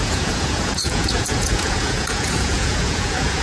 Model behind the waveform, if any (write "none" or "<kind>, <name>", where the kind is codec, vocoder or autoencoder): vocoder, Vocos